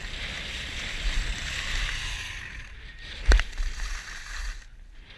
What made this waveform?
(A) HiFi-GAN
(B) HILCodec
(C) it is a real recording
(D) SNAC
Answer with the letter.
C